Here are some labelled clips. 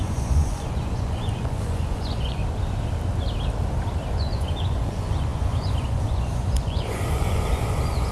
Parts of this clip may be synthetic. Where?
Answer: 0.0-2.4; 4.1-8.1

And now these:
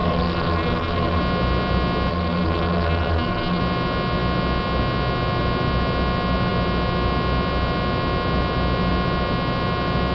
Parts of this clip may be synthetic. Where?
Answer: 0.0-1.2; 2.1-3.6

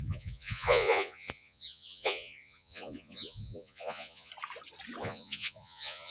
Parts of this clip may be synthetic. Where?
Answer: 0.0-4.3; 5.0-6.1

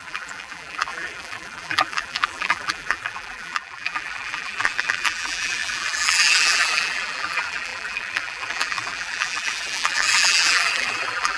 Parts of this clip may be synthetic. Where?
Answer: 0.0-11.4

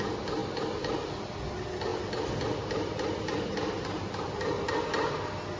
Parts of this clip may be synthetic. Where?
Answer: none

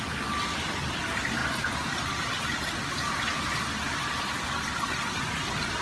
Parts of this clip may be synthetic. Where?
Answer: none

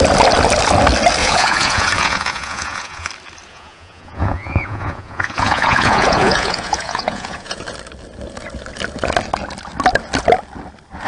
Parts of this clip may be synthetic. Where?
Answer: 1.2-3.1; 3.5-7.6